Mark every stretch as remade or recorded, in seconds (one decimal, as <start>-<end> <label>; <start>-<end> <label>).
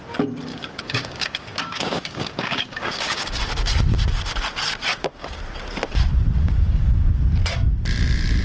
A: 0.0-0.5 recorded; 0.5-3.4 remade; 3.4-4.9 recorded; 4.9-5.4 remade; 5.4-6.4 recorded; 6.4-7.1 remade; 7.1-8.4 recorded